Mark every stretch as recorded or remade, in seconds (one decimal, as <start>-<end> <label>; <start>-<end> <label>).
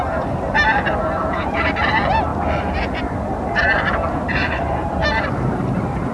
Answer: 0.0-2.3 remade; 2.3-3.0 recorded; 3.0-6.1 remade